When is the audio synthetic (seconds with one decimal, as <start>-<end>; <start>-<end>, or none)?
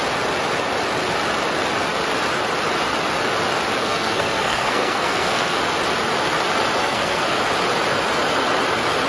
3.8-5.6; 6.8-7.4